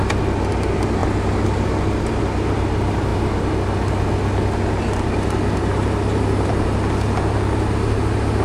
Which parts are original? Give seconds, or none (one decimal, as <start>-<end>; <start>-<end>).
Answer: 0.0-8.4